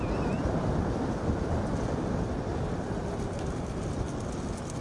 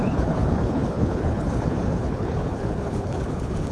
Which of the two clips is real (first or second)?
first